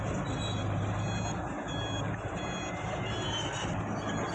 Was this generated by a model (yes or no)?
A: no